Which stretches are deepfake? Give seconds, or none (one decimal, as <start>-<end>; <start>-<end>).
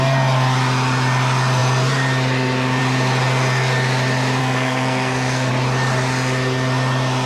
4.4-5.5